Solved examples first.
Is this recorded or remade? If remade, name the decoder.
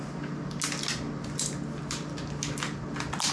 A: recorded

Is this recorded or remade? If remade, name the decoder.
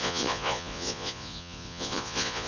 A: remade, vocoder, Vocos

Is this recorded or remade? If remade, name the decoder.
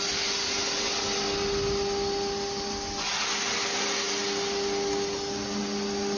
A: recorded